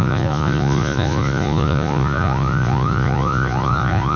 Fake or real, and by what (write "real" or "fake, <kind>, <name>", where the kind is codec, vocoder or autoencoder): fake, vocoder, Vocos